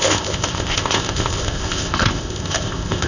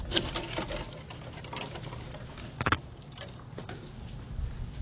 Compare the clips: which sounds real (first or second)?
second